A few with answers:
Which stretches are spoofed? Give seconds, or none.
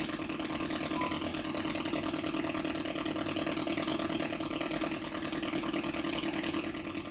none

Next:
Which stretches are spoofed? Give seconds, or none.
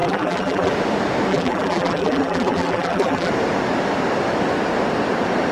0.0-0.7; 1.3-3.3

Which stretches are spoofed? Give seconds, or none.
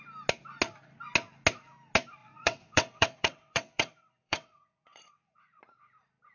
2.2-5.6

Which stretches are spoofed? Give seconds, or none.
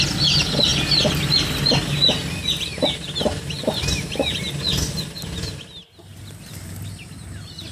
none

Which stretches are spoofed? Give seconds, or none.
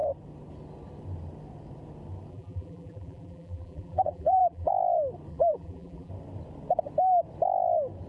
2.3-4.7; 5.3-6.1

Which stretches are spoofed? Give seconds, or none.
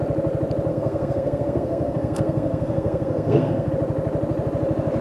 0.7-3.7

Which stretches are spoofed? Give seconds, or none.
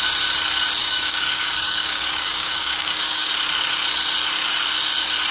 0.8-3.3